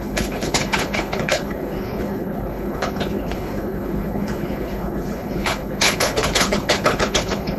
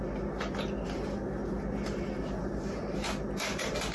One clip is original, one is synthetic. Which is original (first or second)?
second